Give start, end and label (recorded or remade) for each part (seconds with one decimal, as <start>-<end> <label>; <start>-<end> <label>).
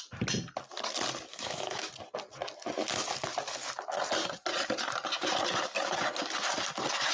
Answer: 0.0-1.3 recorded; 1.3-1.9 remade; 1.9-7.1 recorded